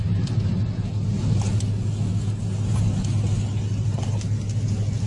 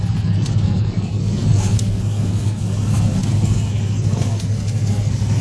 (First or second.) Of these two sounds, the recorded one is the first